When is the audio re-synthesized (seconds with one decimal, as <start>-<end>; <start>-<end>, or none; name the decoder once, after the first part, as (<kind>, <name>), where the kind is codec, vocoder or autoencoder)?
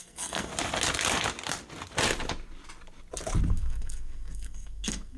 0.0-0.5 (codec, SNAC); 3.5-5.2